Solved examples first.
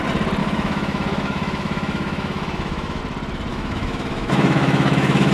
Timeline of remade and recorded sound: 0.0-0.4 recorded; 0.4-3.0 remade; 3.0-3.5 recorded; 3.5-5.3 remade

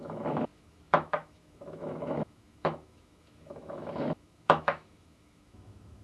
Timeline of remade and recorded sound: 0.0-6.0 remade

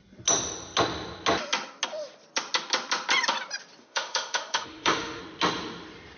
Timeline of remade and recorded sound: 0.0-3.8 recorded; 3.8-5.2 remade; 5.2-6.2 recorded

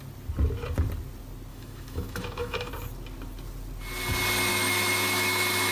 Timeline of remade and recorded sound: 0.0-1.5 recorded; 1.5-2.7 remade; 2.7-4.5 recorded; 4.5-5.7 remade